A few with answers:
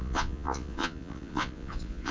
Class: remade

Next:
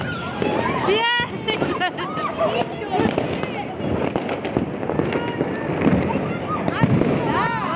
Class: recorded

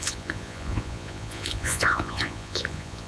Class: remade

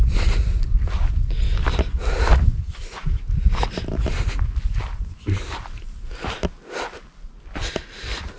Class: recorded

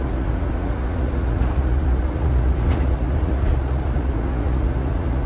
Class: remade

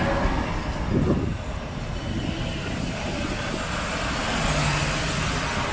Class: recorded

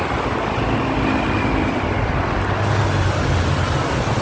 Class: recorded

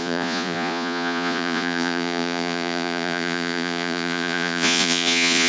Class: remade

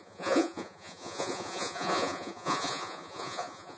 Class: remade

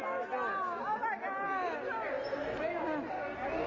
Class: recorded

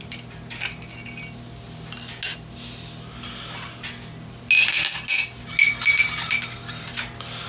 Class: recorded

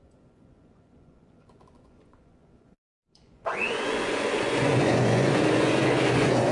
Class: remade